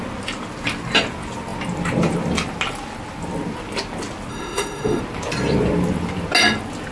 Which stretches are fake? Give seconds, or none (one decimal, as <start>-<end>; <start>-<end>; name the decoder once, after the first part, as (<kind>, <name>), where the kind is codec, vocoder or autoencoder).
4.3-5.0 (autoencoder, DAC-VAE)